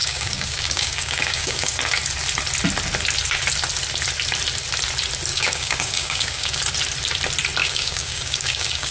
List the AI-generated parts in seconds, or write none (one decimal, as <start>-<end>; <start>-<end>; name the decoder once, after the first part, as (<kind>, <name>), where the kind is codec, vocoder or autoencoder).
0.0-1.8 (codec, DAC); 5.3-6.6; 7.6-8.9